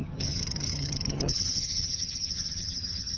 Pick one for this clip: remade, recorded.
remade